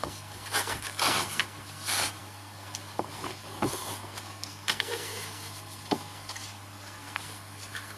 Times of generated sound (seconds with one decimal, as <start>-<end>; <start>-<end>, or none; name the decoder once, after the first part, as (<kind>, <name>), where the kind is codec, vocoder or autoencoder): 0.0-8.0 (codec, SNAC)